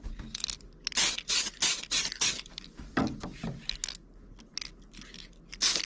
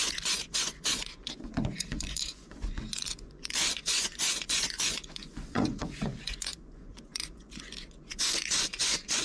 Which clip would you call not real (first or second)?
second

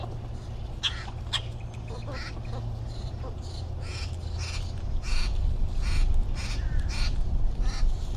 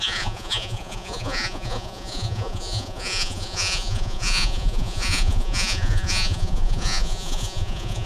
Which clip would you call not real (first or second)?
second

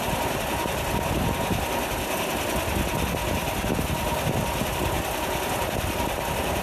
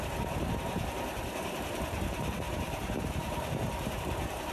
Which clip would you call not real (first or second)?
second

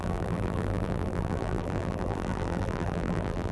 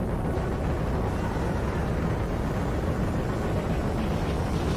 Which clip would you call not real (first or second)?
first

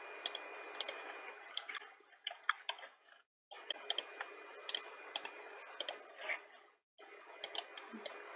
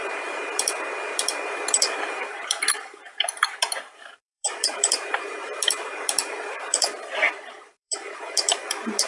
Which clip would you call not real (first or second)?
second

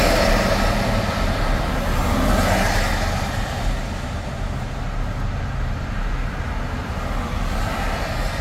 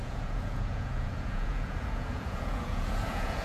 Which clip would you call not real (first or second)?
second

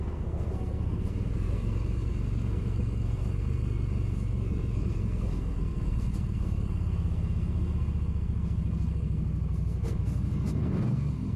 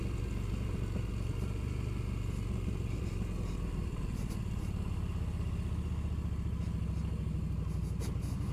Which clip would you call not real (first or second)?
first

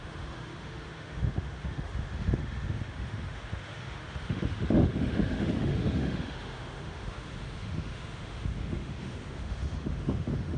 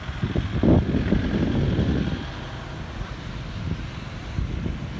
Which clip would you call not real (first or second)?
first